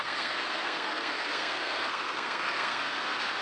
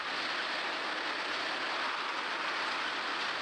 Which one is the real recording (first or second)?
second